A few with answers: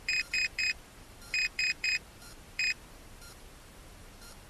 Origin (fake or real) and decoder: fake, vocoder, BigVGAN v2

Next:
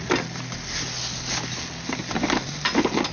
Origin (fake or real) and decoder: real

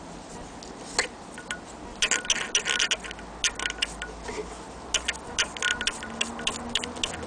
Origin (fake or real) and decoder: real